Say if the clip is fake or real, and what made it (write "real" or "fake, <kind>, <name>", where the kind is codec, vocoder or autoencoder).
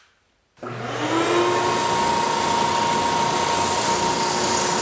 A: real